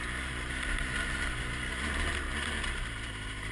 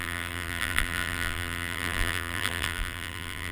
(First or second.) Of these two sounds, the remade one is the second